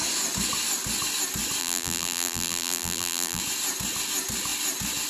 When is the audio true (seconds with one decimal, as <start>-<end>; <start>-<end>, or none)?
0.0-1.6; 3.4-5.1